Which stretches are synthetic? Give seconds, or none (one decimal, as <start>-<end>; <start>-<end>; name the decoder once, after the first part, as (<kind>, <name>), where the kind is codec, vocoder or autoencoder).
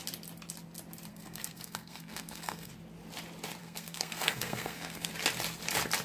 1.1-2.7 (codec, SNAC); 3.6-5.1